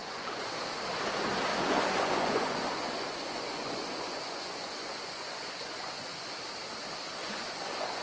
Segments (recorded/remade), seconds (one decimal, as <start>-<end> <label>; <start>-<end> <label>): 0.0-0.6 remade; 0.6-1.5 recorded; 1.5-6.3 remade; 6.3-7.2 recorded; 7.2-8.0 remade